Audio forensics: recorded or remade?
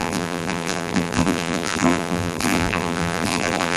remade